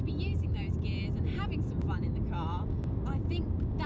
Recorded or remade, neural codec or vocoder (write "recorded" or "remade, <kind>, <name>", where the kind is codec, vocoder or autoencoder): recorded